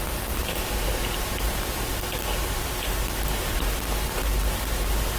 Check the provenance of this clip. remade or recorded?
remade